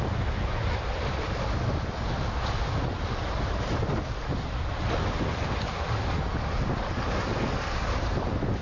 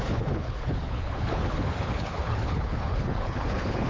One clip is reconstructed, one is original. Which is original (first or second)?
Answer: first